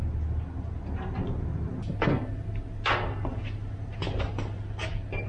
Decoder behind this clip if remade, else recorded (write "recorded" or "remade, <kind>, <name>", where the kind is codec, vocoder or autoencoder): recorded